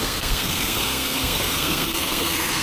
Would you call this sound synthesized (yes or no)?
yes